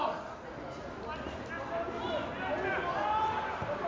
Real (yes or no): yes